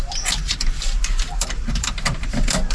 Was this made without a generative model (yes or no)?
no